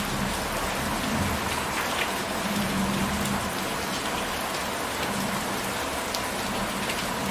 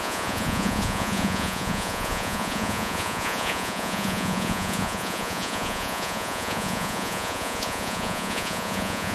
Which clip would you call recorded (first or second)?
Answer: first